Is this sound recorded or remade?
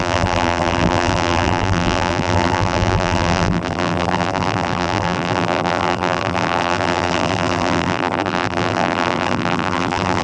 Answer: remade